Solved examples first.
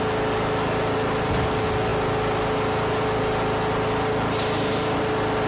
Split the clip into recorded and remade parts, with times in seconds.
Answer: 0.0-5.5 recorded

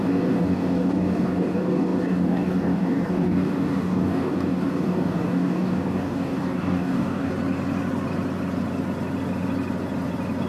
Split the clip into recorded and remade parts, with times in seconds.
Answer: 0.0-7.3 remade; 7.3-10.5 recorded

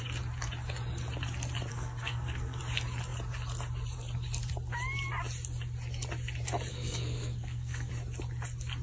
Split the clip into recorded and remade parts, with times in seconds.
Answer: 0.0-1.7 recorded; 1.7-2.6 remade; 2.6-6.7 recorded; 6.7-7.9 remade; 7.9-8.8 recorded

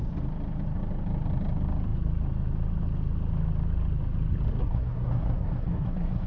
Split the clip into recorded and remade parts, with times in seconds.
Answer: 0.0-4.6 recorded; 4.6-6.3 remade

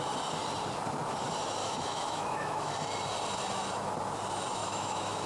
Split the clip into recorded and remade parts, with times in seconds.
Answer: 0.0-1.6 recorded; 1.6-2.7 remade; 2.7-4.6 recorded; 4.6-5.3 remade

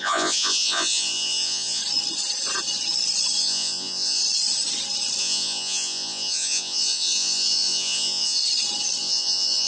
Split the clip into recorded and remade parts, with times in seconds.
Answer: 0.0-1.8 remade; 1.8-3.4 recorded; 3.4-4.2 remade; 4.2-5.2 recorded; 5.2-8.4 remade; 8.4-9.0 recorded; 9.0-9.7 remade